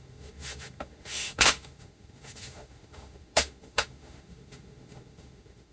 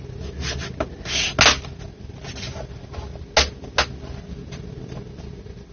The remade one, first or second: first